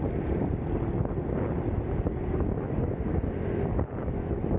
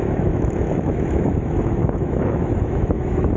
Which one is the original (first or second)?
first